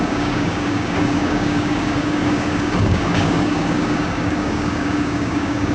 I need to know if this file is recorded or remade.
remade